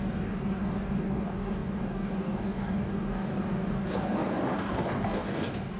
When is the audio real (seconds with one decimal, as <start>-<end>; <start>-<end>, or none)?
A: none